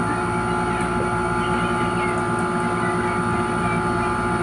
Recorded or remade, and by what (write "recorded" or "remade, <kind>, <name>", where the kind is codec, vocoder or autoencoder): recorded